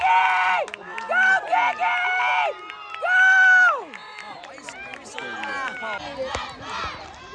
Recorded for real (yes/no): yes